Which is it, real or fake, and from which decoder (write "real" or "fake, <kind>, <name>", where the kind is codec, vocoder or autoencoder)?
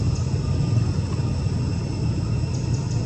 real